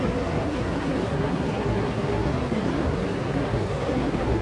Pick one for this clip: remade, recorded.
remade